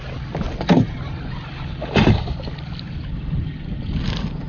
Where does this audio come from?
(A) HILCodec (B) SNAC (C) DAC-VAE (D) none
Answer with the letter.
D